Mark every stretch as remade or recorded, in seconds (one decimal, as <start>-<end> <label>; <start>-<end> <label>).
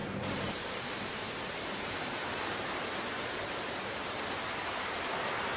0.0-5.6 remade